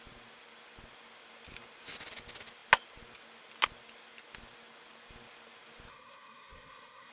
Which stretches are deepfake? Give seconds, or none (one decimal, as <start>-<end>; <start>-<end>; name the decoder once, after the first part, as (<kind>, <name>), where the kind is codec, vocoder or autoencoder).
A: 5.9-7.1 (codec, SNAC)